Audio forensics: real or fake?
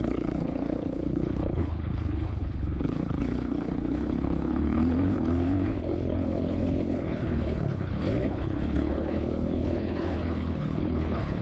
fake